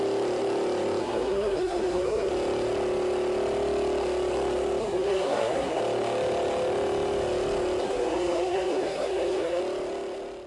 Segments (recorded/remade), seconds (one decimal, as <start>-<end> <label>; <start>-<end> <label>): 0.0-1.0 recorded; 1.0-2.3 remade; 2.3-4.8 recorded; 4.8-5.8 remade; 5.8-7.8 recorded; 7.8-9.6 remade; 9.6-10.5 recorded